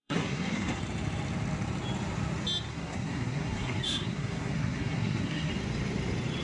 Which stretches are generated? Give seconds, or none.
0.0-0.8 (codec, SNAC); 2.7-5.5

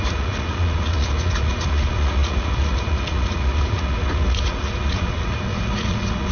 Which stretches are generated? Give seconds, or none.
0.0-6.3 (vocoder, Vocos)

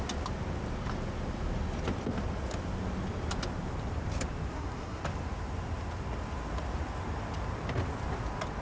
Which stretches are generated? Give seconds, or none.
4.5-5.0 (codec, SNAC)

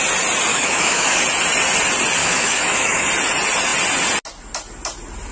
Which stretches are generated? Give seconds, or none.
0.5-1.2 (autoencoder, DAC-VAE); 2.2-3.1

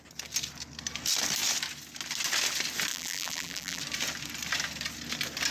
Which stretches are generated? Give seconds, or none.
2.9-3.8 (vocoder, BigVGAN v2)

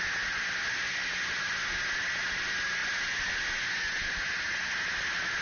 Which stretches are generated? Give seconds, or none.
none

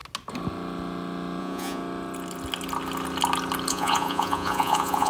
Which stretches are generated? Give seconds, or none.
1.4-1.8 (vocoder, Vocos); 3.7-5.1

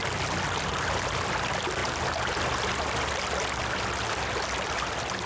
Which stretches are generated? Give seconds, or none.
none